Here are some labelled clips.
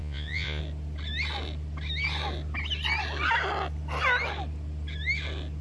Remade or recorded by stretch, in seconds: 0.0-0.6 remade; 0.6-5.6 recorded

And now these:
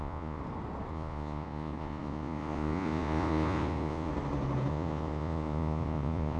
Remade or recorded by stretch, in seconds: 0.0-0.4 remade; 0.4-0.9 recorded; 0.9-4.1 remade; 4.1-4.7 recorded; 4.7-6.4 remade